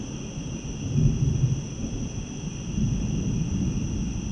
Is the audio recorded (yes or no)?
yes